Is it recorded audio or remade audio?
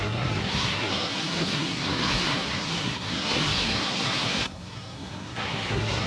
remade